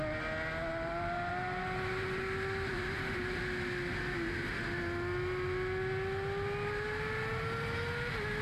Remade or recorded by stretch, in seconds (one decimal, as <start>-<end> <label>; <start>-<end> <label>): 0.0-0.7 recorded; 0.7-2.2 remade; 2.2-2.7 recorded; 2.7-3.4 remade; 3.4-8.4 recorded